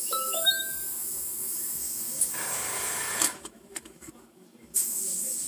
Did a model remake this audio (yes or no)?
yes